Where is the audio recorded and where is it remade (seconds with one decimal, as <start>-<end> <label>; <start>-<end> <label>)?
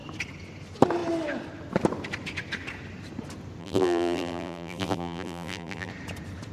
0.0-3.6 recorded; 3.6-5.9 remade; 5.9-6.5 recorded